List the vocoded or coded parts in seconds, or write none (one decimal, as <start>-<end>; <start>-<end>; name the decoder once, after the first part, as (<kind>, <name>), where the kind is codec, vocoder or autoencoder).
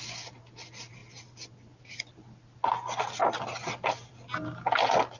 none